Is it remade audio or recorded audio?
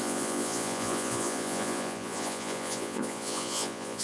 remade